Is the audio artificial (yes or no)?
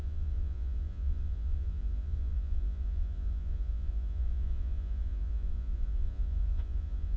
yes